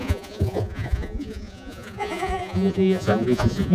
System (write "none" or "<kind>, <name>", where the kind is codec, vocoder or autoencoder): vocoder, Vocos